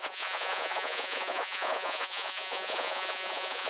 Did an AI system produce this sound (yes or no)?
yes